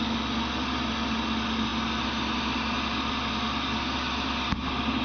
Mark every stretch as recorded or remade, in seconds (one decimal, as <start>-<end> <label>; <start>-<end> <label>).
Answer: 0.0-5.0 recorded